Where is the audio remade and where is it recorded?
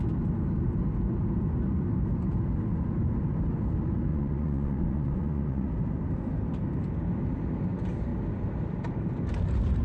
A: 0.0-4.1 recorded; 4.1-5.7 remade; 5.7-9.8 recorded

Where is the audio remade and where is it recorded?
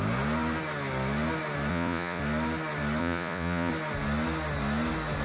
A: 0.0-1.7 recorded; 1.7-2.2 remade; 2.2-3.0 recorded; 3.0-3.7 remade; 3.7-5.2 recorded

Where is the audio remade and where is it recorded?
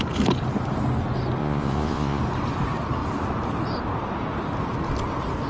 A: 0.0-1.4 recorded; 1.4-2.2 remade; 2.2-5.5 recorded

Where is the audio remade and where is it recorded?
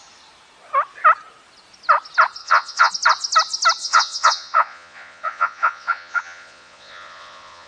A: 0.0-2.4 recorded; 2.4-2.9 remade; 2.9-3.8 recorded; 3.8-7.7 remade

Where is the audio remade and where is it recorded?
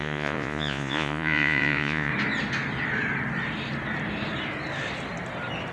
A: 0.0-2.1 remade; 2.1-5.7 recorded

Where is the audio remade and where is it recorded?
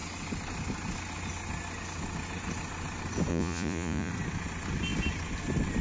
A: 0.0-3.3 recorded; 3.3-4.1 remade; 4.1-5.8 recorded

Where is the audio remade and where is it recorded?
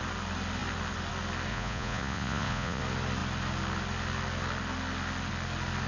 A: 0.0-1.5 recorded; 1.5-2.8 remade; 2.8-5.9 recorded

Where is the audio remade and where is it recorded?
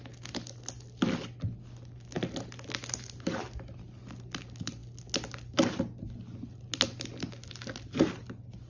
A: 0.0-8.7 recorded